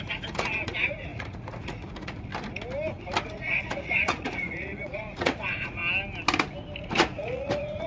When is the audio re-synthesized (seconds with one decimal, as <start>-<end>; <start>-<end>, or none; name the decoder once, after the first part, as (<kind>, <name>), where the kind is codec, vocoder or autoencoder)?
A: 0.0-2.3 (vocoder, Vocos); 3.2-5.8; 6.8-7.9